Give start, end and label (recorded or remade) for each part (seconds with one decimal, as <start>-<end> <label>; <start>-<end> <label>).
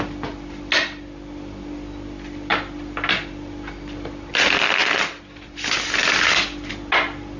0.0-7.4 recorded